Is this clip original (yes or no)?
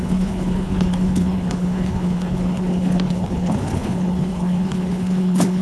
no